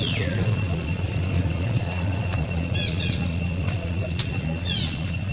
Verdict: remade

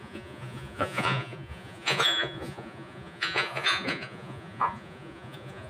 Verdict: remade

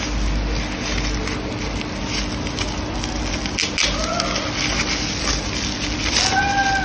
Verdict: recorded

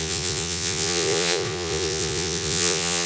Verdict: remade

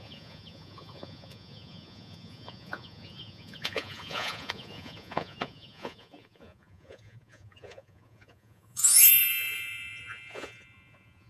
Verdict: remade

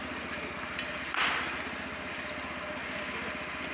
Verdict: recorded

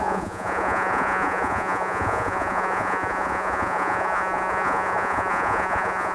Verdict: remade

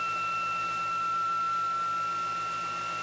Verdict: recorded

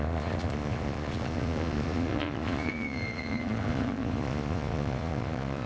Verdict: remade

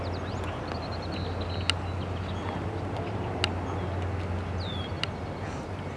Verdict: recorded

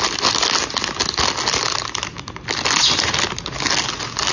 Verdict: recorded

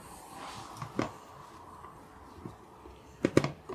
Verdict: recorded